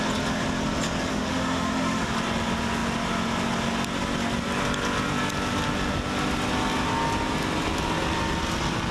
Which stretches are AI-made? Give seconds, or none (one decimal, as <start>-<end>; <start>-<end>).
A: 1.1-2.1